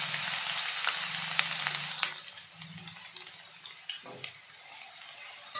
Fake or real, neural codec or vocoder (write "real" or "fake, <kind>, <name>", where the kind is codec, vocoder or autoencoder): real